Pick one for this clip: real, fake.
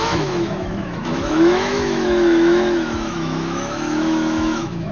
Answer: fake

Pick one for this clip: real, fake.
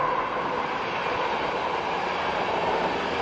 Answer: real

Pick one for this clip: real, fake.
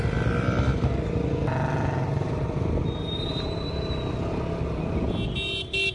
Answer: real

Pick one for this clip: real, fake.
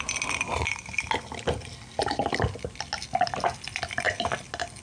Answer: real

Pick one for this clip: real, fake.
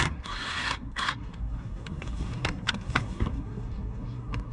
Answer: fake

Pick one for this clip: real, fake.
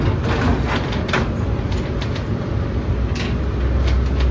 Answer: real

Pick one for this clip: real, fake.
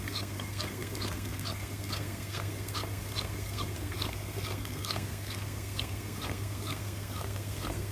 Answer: fake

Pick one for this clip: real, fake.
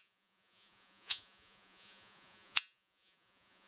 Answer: fake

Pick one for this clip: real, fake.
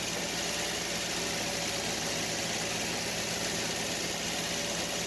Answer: real